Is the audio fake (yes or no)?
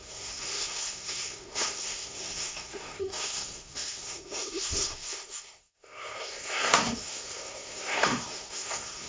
yes